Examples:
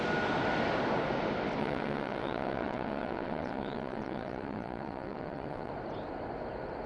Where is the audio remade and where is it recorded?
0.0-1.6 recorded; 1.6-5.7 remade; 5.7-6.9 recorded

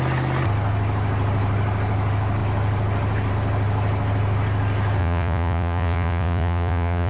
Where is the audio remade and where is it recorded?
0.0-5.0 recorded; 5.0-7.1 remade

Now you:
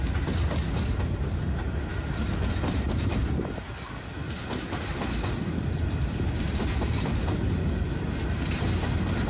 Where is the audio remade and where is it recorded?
0.0-9.3 recorded

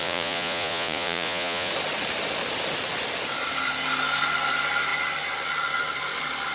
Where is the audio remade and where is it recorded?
0.0-1.7 remade; 1.7-6.5 recorded

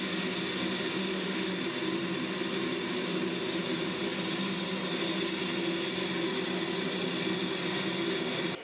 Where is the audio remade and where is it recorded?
0.0-1.0 recorded; 1.0-1.6 remade; 1.6-8.6 recorded

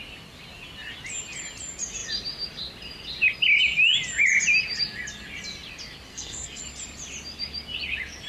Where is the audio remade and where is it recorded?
0.0-6.1 recorded; 6.1-6.6 remade; 6.6-8.3 recorded

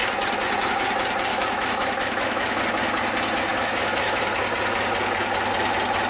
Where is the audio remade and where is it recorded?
0.0-1.3 recorded; 1.3-2.6 remade; 2.6-3.5 recorded; 3.5-4.2 remade; 4.2-6.1 recorded

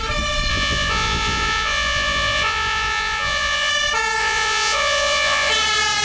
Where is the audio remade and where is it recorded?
0.0-0.5 recorded; 0.5-3.7 remade; 3.7-4.2 recorded; 4.2-5.5 remade; 5.5-6.0 recorded